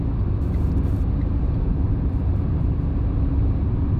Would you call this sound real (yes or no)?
no